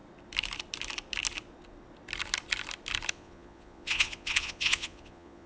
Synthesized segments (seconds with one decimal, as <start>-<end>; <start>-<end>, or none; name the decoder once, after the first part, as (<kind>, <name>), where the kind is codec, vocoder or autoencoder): 3.1-5.5 (vocoder, Vocos)